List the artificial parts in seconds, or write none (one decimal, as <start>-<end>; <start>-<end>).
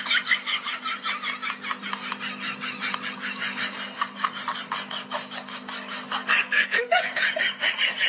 6.4-7.0